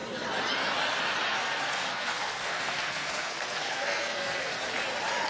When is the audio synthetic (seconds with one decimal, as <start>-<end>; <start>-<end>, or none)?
1.3-4.5